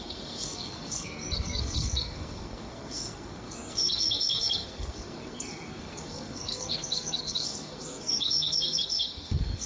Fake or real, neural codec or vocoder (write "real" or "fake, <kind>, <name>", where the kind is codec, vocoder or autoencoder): fake, codec, SNAC